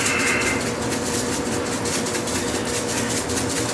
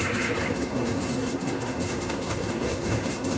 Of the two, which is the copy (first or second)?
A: second